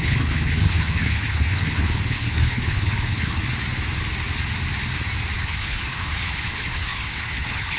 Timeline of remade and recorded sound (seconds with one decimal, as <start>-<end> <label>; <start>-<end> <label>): 0.0-3.4 remade; 3.4-5.4 recorded; 5.4-7.8 remade